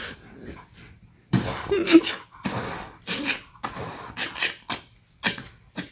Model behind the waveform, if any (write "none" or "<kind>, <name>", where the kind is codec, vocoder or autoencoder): vocoder, BigVGAN v2